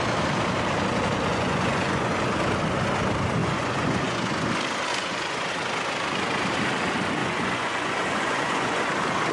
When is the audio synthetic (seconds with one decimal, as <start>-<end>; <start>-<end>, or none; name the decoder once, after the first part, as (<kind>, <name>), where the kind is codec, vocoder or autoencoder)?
1.3-2.1 (vocoder, Vocos); 3.4-4.5; 4.9-5.5; 7.2-8.9

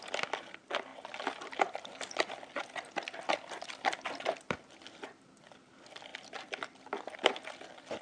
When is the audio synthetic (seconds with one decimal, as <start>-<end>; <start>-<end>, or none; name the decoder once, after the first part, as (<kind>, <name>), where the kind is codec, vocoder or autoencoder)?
none

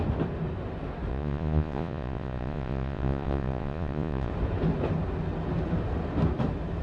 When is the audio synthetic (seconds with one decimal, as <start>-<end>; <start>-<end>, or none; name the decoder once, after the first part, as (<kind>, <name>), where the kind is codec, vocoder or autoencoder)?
1.1-4.3 (vocoder, Vocos)

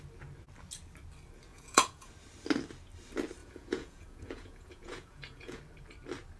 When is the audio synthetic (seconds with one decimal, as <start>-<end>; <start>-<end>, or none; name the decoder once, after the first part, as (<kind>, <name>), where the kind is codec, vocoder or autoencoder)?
1.5-2.1 (vocoder, Vocos); 3.4-5.6

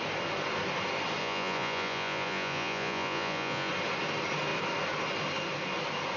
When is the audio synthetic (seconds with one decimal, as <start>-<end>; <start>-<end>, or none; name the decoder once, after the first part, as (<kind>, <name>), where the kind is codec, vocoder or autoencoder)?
1.2-3.7 (vocoder, Vocos)

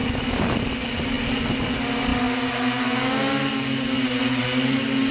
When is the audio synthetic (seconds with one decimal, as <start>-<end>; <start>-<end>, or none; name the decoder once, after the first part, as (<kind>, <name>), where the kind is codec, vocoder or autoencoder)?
none

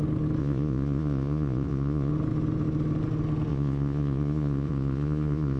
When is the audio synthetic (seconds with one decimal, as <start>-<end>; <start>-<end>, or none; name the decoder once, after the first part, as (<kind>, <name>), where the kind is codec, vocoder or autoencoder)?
0.4-2.1 (vocoder, Vocos); 3.5-5.6

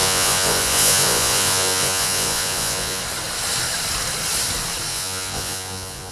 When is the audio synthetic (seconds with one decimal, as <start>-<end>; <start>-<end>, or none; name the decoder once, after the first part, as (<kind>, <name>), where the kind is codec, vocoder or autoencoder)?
0.0-3.0 (vocoder, Vocos); 4.9-6.1